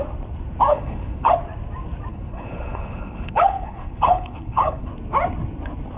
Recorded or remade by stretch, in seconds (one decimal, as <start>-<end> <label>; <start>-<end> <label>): 0.0-0.7 recorded; 0.7-1.3 remade; 1.3-2.1 recorded; 2.1-4.9 remade; 4.9-6.0 recorded